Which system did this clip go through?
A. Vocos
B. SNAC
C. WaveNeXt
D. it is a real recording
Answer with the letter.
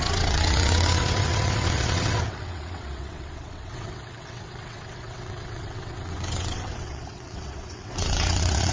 C